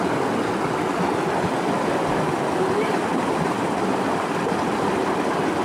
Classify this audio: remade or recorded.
recorded